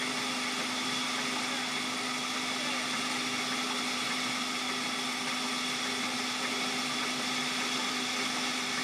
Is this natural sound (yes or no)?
yes